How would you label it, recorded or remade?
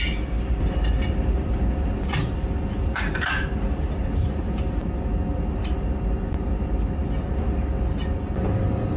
recorded